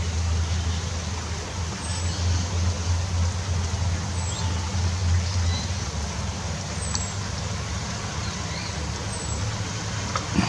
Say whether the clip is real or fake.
real